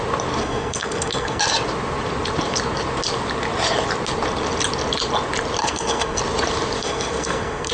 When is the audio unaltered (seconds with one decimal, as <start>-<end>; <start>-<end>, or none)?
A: 0.0-0.4; 1.4-5.6; 6.2-6.8